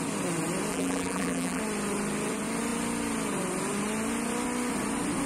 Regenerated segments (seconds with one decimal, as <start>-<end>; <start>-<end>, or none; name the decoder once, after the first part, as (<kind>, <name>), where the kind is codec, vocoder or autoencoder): 0.7-1.6 (vocoder, BigVGAN v2)

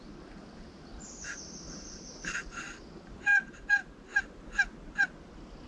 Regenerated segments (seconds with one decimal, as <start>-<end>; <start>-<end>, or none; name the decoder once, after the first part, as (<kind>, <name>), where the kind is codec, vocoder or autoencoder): 0.0-4.1 (vocoder, BigVGAN v2)

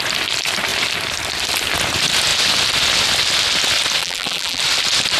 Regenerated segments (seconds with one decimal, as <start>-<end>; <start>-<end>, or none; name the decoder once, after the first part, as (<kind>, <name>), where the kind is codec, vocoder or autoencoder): 4.0-4.6 (vocoder, BigVGAN v2)

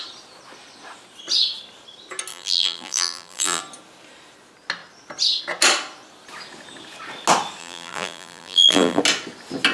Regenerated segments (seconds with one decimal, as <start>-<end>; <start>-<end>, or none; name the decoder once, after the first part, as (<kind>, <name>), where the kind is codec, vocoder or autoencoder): 2.3-3.6 (vocoder, BigVGAN v2); 7.6-9.0

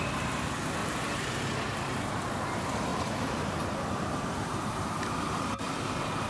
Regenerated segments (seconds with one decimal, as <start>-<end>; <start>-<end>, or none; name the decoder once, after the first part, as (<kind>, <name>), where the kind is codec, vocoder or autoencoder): 0.8-2.4 (vocoder, BigVGAN v2); 2.9-4.7

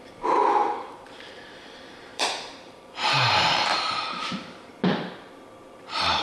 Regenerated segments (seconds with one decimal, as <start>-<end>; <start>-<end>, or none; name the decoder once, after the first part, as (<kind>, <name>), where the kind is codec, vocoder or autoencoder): 0.0-4.7 (vocoder, BigVGAN v2); 5.8-6.2

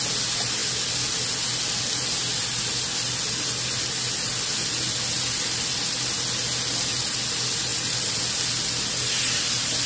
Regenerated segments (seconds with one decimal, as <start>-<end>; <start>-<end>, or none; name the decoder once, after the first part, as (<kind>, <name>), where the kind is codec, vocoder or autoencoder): none